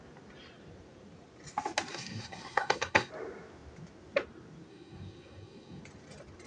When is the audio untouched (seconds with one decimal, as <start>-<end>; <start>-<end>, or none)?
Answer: 0.0-1.9; 3.1-4.7; 5.8-6.5